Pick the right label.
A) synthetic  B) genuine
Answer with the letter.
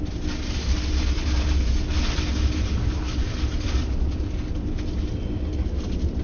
B